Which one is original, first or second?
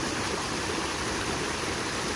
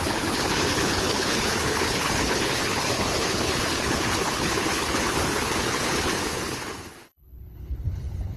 first